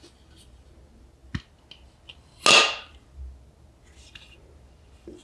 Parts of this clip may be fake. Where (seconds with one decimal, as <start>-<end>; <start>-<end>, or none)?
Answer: none